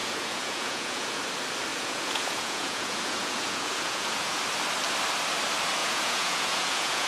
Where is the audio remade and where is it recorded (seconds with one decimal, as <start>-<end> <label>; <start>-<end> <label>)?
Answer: 0.0-1.2 remade; 1.2-1.7 recorded; 1.7-4.4 remade; 4.4-5.8 recorded; 5.8-7.1 remade